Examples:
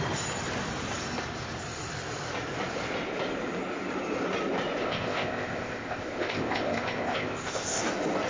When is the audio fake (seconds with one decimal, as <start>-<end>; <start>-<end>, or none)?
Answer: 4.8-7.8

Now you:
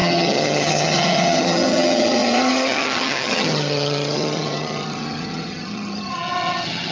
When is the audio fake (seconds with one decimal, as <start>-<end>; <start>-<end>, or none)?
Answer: 0.0-6.9

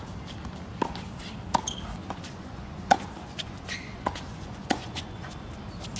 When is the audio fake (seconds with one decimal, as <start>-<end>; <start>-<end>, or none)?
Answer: 2.0-5.6

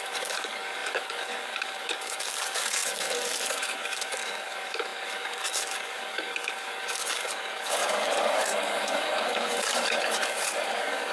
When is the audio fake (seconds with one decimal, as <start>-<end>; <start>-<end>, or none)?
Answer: 0.0-11.1